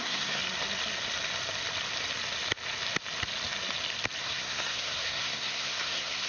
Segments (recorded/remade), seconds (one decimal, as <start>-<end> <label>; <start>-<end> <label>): 0.0-0.4 remade; 0.4-4.2 recorded; 4.2-6.3 remade